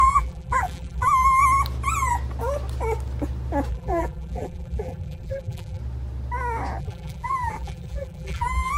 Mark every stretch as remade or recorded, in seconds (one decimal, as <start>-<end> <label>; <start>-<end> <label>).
0.0-1.4 remade; 1.4-3.7 recorded; 3.7-5.8 remade; 5.8-6.8 recorded; 6.8-8.8 remade

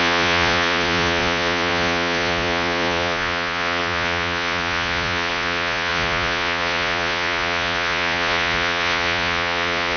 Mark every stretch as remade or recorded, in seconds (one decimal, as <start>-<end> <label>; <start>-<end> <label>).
0.0-10.0 remade